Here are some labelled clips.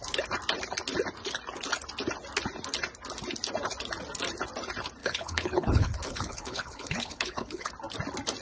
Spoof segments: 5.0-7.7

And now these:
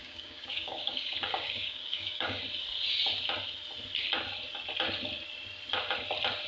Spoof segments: 0.0-2.4